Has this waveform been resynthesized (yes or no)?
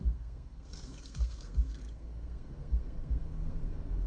yes